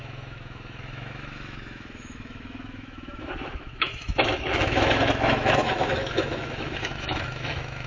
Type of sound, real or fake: fake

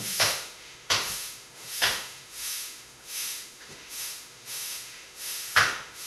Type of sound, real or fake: fake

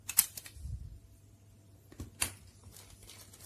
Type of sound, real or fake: real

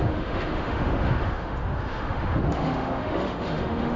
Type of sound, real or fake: fake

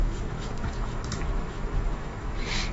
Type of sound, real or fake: fake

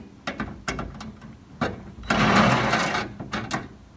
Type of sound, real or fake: real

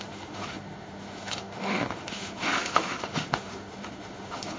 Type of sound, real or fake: fake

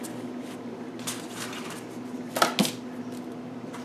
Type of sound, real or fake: real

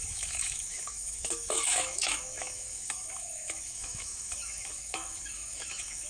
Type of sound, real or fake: fake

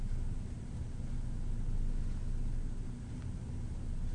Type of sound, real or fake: real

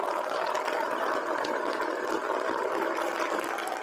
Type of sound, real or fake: real